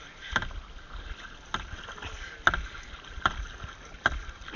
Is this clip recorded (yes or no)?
yes